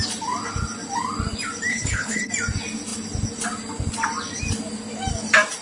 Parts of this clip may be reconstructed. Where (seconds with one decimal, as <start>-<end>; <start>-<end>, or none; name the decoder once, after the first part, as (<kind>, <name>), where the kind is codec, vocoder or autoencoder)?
1.7-2.3 (codec, HILCodec)